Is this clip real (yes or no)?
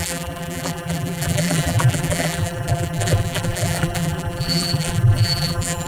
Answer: no